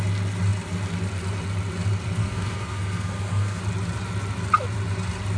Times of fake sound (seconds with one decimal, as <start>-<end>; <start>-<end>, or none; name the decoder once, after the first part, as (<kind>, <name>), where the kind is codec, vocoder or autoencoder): 2.2-3.6 (codec, SNAC)